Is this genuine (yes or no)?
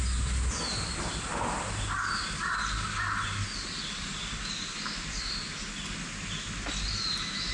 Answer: yes